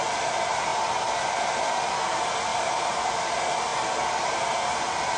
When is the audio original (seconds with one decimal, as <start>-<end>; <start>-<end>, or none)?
0.0-2.5; 3.1-5.2